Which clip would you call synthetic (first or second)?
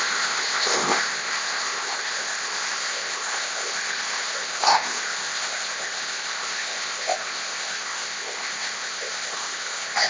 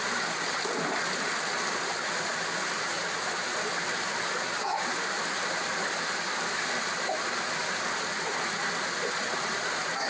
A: first